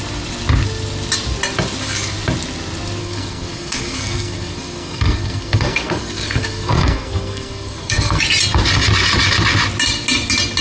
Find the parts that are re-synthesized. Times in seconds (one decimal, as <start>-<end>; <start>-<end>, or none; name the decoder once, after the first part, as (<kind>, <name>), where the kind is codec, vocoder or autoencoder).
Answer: 3.0-8.2 (codec, SNAC)